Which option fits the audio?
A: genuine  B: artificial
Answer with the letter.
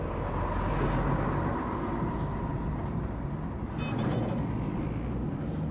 A